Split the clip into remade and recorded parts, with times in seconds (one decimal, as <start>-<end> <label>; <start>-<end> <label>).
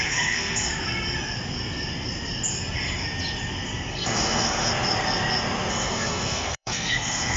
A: 0.0-0.7 remade; 0.7-3.9 recorded; 3.9-4.7 remade; 4.7-5.7 recorded; 5.7-7.4 remade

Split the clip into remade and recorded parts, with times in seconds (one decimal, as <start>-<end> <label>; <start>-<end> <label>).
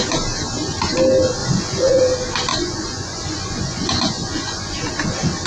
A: 0.0-1.4 recorded; 1.4-2.0 remade; 2.0-2.5 recorded; 2.5-4.8 remade; 4.8-5.5 recorded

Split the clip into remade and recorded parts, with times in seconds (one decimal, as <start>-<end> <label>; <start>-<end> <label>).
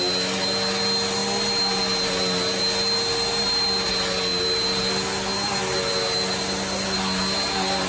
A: 0.0-7.9 recorded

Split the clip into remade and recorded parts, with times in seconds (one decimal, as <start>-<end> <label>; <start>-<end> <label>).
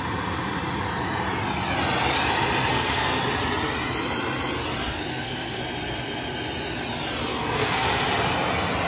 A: 0.0-2.7 recorded; 2.7-3.2 remade; 3.2-5.1 recorded; 5.1-5.6 remade; 5.6-7.3 recorded; 7.3-7.9 remade; 7.9-8.9 recorded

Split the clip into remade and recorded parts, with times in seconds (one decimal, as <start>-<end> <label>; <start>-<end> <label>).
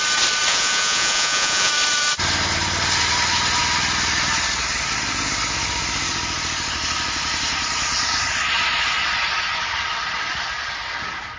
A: 0.0-0.5 recorded; 0.5-1.7 remade; 1.7-11.4 recorded